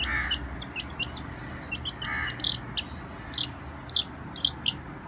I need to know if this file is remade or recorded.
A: recorded